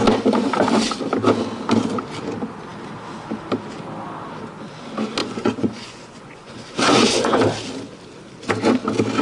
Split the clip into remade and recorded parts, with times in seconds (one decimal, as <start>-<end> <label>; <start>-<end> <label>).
0.0-5.2 recorded; 5.2-7.4 remade; 7.4-9.2 recorded